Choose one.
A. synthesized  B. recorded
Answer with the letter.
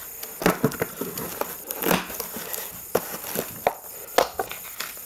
B